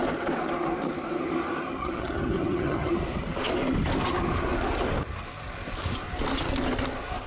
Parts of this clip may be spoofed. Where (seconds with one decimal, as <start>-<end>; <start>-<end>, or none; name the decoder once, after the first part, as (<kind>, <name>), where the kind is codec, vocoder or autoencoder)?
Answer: 1.8-2.9 (vocoder, HiFi-GAN)